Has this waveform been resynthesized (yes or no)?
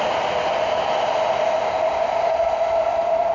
no